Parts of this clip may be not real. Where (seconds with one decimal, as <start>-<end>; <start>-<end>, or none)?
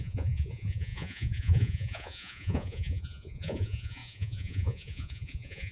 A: 0.0-5.7